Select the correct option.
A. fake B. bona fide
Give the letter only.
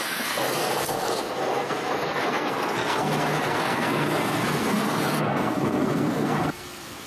A